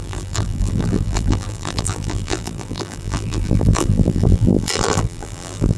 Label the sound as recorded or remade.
remade